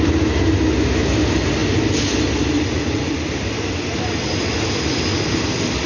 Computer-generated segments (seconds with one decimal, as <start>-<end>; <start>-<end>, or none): none